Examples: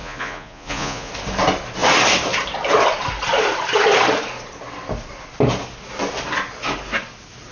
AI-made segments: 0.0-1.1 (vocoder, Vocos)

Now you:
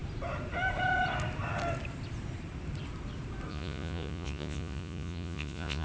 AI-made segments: 3.5-5.8 (vocoder, Vocos)

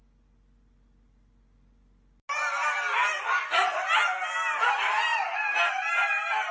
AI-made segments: none

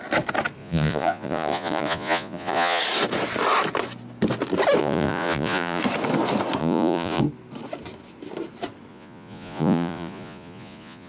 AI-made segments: 0.6-2.8 (vocoder, Vocos); 4.8-5.8; 6.6-7.2; 8.9-11.1